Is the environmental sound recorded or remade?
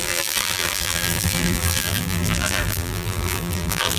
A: remade